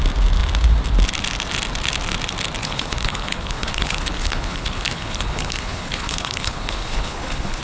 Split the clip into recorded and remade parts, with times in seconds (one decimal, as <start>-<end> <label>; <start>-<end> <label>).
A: 0.0-2.6 recorded; 2.6-7.6 remade